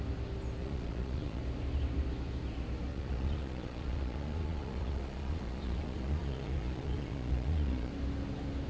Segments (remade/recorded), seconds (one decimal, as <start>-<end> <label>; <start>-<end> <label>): 0.0-0.6 recorded; 0.6-1.4 remade; 1.4-2.9 recorded; 2.9-7.9 remade; 7.9-8.7 recorded

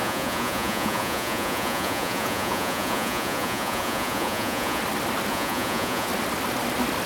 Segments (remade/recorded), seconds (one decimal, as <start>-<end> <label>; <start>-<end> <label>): 0.0-4.8 remade; 4.8-5.3 recorded; 5.3-6.1 remade; 6.1-7.1 recorded

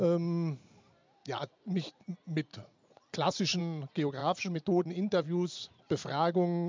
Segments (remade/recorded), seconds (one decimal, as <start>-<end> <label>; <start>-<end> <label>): 0.0-1.2 recorded; 1.2-2.1 remade; 2.1-2.5 recorded; 2.5-3.6 remade; 3.6-4.2 recorded; 4.2-5.8 remade; 5.8-6.7 recorded

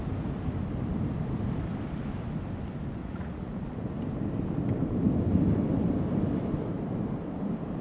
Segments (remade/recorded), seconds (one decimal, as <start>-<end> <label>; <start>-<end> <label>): 0.0-3.0 recorded; 3.0-3.5 remade; 3.5-7.8 recorded

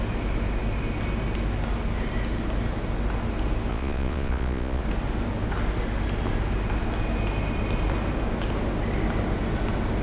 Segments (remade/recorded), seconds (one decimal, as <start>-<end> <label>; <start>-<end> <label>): 0.0-3.7 recorded; 3.7-4.8 remade; 4.8-10.0 recorded

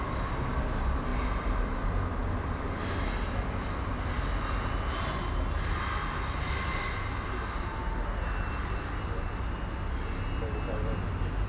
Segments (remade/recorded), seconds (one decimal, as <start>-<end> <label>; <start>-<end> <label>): 0.0-11.5 recorded